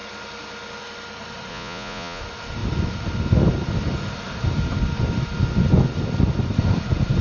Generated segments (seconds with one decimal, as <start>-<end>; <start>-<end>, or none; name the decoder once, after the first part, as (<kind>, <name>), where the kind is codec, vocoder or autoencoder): 1.5-2.2 (vocoder, Vocos)